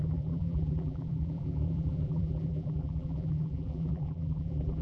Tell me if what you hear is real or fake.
fake